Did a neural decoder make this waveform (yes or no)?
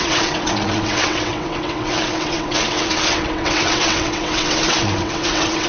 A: yes